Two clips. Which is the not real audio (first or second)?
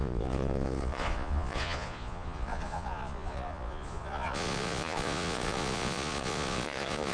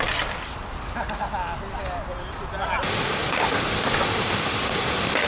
first